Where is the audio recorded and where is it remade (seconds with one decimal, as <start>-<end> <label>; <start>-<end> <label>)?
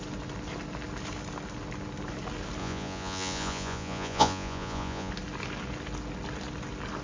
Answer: 0.0-2.6 recorded; 2.6-5.1 remade; 5.1-7.0 recorded